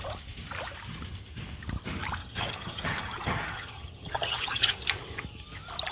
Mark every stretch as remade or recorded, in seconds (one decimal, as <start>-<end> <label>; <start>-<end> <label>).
0.0-2.2 recorded; 2.2-4.7 remade; 4.7-5.9 recorded